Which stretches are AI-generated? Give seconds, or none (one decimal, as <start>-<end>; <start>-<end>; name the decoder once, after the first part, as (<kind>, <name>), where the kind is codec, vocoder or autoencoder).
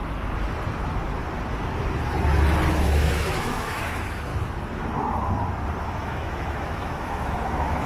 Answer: 2.7-4.3 (autoencoder, DAC-VAE); 5.8-7.9